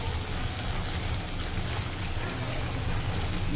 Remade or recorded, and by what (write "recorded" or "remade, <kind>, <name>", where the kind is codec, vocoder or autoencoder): recorded